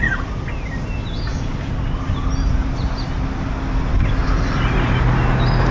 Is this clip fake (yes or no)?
no